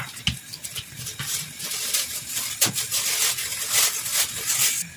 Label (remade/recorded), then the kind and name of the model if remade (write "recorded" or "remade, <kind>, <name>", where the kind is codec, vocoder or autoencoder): recorded